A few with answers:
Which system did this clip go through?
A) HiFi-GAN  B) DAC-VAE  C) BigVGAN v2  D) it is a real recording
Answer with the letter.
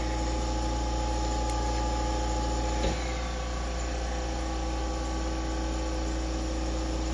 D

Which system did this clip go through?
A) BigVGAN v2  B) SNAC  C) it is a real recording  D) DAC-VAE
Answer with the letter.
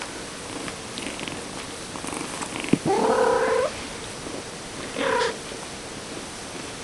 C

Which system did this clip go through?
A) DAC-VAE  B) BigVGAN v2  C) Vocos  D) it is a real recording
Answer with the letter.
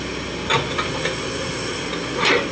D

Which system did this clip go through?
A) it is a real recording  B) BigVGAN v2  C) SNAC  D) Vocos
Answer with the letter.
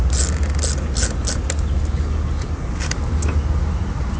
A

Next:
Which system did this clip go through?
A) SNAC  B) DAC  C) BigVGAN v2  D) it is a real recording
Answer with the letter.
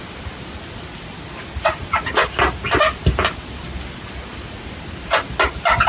D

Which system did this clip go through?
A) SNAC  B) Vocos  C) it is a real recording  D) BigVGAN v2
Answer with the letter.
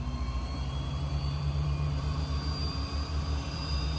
D